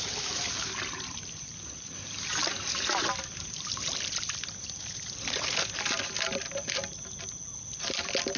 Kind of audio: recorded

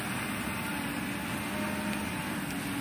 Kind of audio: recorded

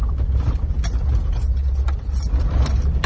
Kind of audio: recorded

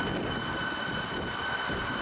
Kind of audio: recorded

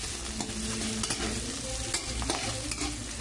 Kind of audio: recorded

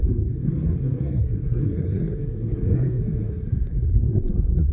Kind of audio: remade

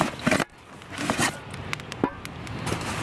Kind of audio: recorded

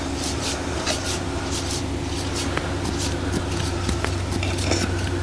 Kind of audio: recorded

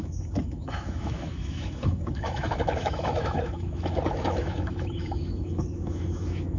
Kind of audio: remade